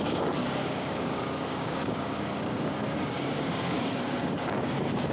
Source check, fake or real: fake